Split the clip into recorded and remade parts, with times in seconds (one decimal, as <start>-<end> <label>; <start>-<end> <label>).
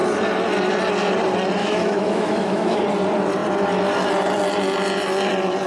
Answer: 0.0-1.6 recorded; 1.6-2.8 remade; 2.8-5.7 recorded